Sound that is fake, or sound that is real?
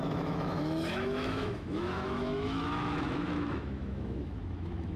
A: fake